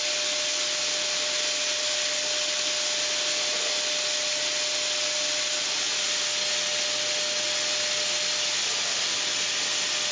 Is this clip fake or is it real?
real